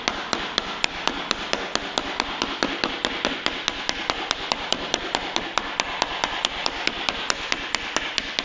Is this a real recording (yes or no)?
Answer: yes